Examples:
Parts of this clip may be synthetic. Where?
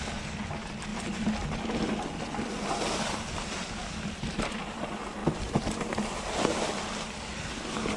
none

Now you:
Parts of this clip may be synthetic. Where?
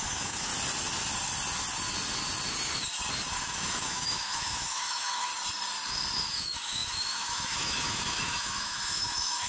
0.0-0.5 (autoencoder, DAC-VAE); 3.4-5.3; 6.3-9.5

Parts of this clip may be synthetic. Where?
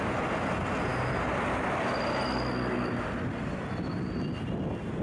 none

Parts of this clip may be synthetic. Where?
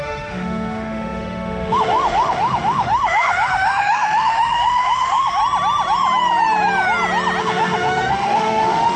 0.0-5.4 (autoencoder, DAC-VAE); 7.4-9.0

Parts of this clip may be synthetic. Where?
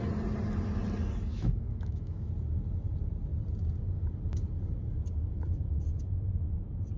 1.3-2.3 (autoencoder, DAC-VAE)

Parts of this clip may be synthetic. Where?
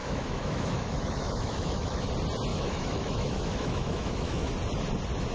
0.0-2.1 (autoencoder, DAC-VAE); 2.5-4.5